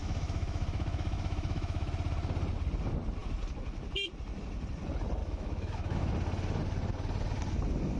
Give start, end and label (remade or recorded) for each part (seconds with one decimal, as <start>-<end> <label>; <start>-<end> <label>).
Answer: 0.0-1.9 remade; 1.9-5.2 recorded; 5.2-6.1 remade; 6.1-8.0 recorded